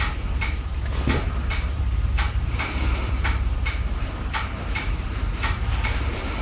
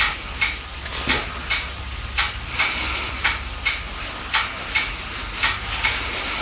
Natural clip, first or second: second